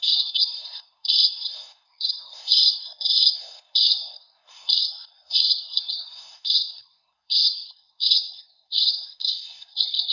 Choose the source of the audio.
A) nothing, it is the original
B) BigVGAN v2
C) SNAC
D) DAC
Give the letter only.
C